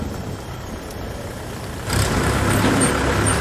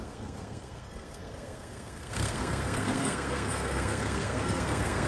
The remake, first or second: second